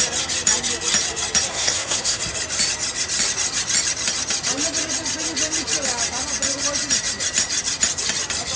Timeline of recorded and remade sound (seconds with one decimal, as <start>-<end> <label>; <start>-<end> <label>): 0.0-1.5 recorded; 1.5-2.2 remade; 2.2-8.6 recorded